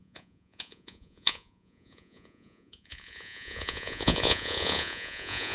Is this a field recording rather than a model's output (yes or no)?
no